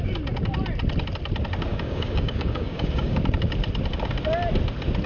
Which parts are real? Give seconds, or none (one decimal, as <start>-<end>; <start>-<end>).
0.0-1.7; 3.2-5.1